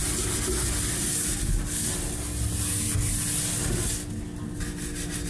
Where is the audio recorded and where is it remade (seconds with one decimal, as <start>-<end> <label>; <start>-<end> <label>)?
0.0-5.3 recorded